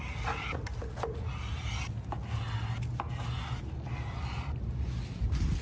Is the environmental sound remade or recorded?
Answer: recorded